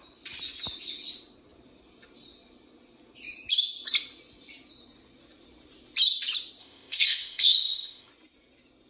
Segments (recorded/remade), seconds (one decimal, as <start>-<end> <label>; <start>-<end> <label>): 0.0-6.6 recorded; 6.6-8.1 remade; 8.1-8.9 recorded